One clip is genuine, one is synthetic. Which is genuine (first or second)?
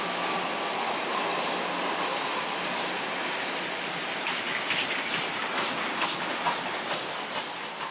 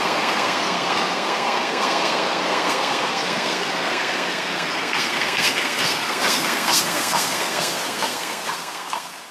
first